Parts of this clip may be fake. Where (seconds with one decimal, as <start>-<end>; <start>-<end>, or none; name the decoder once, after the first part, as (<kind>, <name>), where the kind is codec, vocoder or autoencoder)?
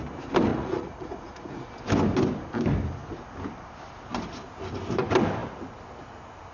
0.5-1.7 (vocoder, Vocos)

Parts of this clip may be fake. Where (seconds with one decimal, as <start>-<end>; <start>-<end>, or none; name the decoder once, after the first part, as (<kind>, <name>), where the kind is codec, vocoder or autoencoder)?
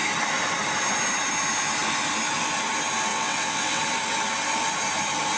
3.1-3.8 (vocoder, WaveNeXt)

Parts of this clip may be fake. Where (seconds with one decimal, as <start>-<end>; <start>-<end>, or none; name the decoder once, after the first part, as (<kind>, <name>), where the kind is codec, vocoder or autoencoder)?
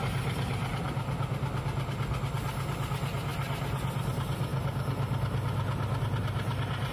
none